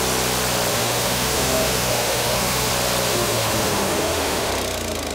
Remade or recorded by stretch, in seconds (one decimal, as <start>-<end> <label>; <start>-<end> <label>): 0.0-0.7 recorded; 0.7-2.7 remade; 2.7-3.1 recorded; 3.1-4.5 remade; 4.5-5.1 recorded